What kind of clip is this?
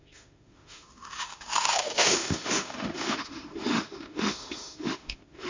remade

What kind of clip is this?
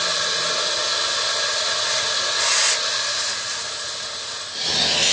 recorded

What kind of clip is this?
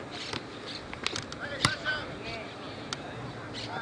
recorded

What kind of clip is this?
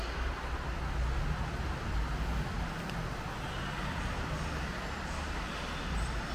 recorded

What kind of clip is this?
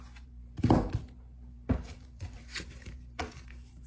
remade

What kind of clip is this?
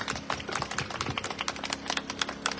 recorded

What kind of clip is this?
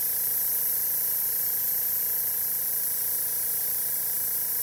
recorded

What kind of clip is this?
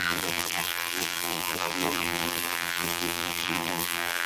remade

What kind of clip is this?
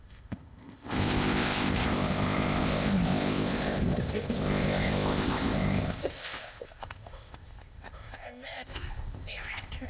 remade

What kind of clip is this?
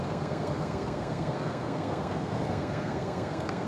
remade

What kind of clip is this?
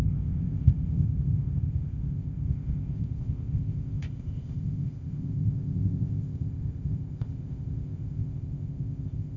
remade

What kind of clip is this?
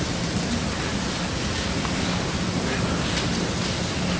recorded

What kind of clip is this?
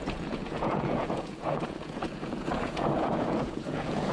remade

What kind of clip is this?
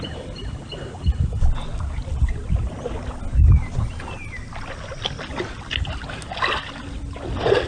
recorded